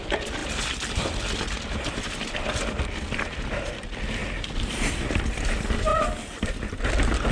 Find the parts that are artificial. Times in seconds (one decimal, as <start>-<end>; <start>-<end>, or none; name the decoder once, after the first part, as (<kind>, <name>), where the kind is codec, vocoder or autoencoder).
0.4-3.7 (vocoder, BigVGAN v2); 5.9-6.8